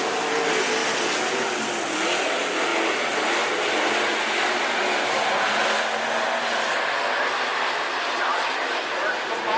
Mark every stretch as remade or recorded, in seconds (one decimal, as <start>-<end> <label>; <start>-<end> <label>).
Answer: 0.0-9.6 recorded